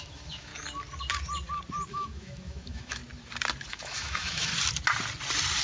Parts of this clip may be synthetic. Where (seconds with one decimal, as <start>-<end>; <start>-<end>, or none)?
0.0-0.5; 1.9-3.0; 3.7-4.5